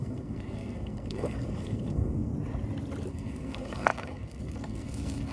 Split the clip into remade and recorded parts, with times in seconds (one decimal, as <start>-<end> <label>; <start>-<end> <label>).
0.0-2.3 remade; 2.3-3.1 recorded; 3.1-5.3 remade